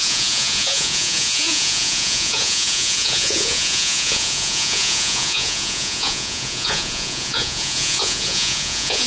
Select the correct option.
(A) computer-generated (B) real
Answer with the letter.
A